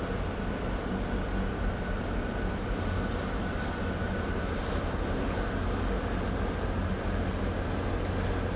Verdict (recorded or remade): recorded